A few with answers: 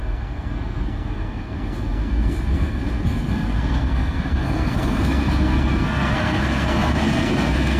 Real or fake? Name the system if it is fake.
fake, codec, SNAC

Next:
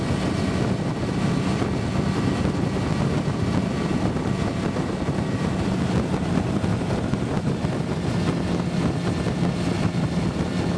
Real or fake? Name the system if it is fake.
real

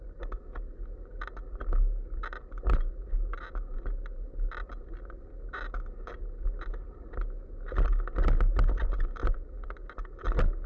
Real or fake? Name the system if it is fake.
real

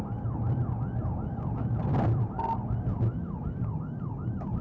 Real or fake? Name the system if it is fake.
real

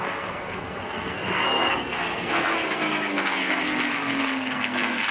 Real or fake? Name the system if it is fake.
fake, codec, SNAC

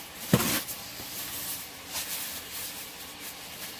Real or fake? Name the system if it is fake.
real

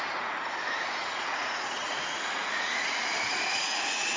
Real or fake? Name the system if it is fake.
fake, vocoder, Vocos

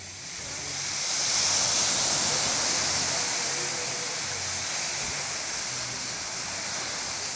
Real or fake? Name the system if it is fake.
real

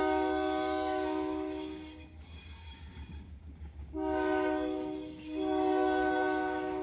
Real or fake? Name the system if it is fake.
fake, codec, DAC